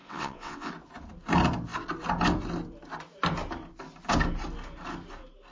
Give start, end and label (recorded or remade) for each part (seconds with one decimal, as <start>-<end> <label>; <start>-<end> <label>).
0.0-0.7 remade; 0.7-5.5 recorded